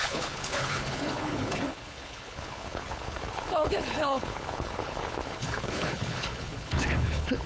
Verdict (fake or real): fake